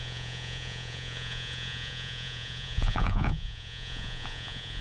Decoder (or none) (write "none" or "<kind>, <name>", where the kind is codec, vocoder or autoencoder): vocoder, Vocos